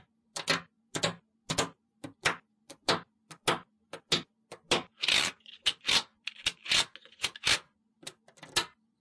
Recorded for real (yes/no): yes